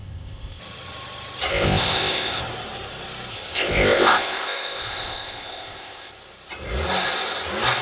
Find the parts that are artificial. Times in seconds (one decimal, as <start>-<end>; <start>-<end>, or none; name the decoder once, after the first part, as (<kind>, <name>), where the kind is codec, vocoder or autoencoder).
0.0-0.6 (codec, ZipCodec); 1.5-2.4; 3.3-6.1